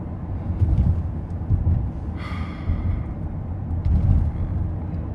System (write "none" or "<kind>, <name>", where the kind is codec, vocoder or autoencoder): none